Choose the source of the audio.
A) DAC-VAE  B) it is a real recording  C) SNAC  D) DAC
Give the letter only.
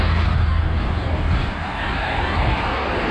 D